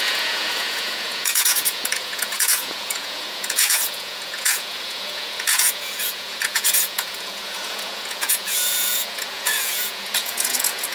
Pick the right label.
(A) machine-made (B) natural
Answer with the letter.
A